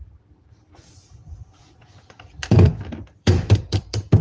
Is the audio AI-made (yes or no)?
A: yes